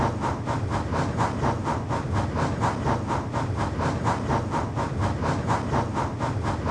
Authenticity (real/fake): real